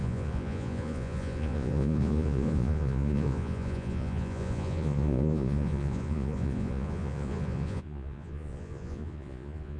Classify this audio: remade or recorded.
remade